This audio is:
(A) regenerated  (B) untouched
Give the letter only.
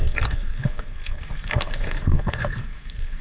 A